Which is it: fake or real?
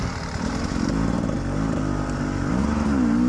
fake